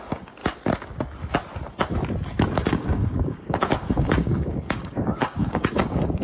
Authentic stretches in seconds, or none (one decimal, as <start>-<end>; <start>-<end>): 0.4-2.4